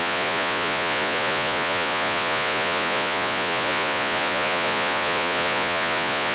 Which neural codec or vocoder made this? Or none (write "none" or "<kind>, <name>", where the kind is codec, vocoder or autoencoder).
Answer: vocoder, Vocos